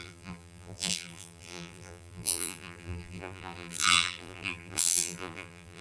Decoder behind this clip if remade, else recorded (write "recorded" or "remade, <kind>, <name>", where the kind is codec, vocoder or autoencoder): remade, vocoder, BigVGAN v2